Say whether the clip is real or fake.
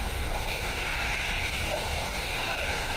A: fake